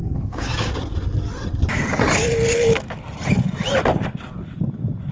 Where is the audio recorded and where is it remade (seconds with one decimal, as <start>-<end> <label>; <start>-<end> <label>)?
0.0-0.7 remade; 0.7-5.1 recorded